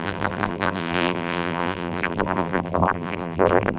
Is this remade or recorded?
remade